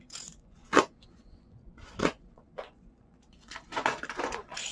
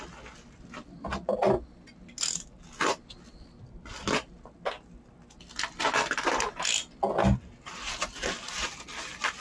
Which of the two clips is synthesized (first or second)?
first